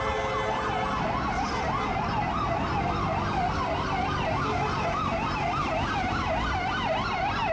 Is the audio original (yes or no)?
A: yes